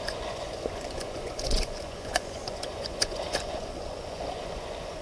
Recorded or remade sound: remade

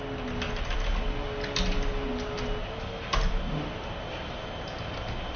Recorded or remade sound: recorded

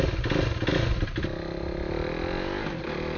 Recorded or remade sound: recorded